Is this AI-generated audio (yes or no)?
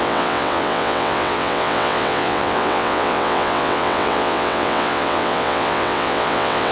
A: yes